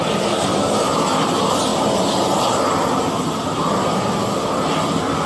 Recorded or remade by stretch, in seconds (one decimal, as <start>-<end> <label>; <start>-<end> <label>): 0.0-5.3 recorded